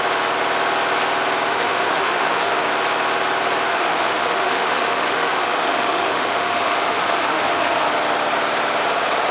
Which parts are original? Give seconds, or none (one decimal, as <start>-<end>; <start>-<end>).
0.0-1.5; 2.6-3.7; 7.9-9.3